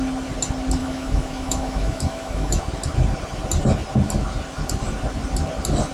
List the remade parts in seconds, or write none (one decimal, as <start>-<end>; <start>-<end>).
0.8-2.6